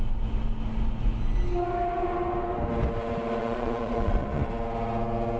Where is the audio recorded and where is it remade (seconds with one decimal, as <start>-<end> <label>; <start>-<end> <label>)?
0.0-3.4 recorded; 3.4-4.5 remade; 4.5-5.4 recorded